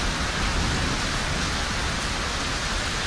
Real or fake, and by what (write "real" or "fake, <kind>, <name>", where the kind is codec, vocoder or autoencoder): real